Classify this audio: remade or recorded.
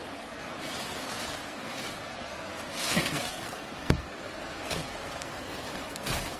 remade